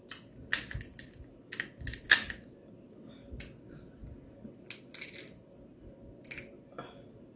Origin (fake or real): real